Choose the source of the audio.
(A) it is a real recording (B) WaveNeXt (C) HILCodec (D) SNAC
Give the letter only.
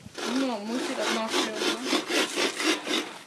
A